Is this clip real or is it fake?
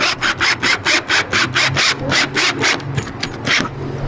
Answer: real